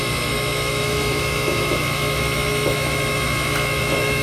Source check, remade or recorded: remade